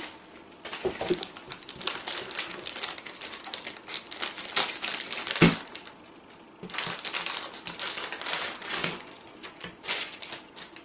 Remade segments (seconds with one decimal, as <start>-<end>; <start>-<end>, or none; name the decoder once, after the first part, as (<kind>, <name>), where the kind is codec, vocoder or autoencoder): 8.8-10.2 (vocoder, Vocos)